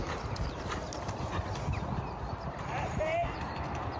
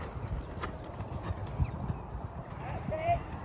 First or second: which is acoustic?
first